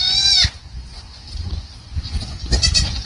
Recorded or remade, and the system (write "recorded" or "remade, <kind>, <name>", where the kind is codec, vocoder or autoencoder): remade, vocoder, Vocos